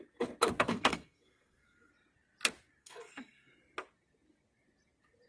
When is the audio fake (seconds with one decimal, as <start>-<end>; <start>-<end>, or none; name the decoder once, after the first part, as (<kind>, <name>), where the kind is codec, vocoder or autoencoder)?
0.7-1.9 (codec, SNAC); 2.8-3.5